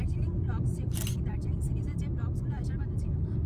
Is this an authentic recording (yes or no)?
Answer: yes